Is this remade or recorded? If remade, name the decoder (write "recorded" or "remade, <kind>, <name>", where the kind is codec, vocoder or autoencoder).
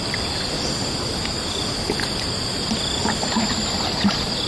recorded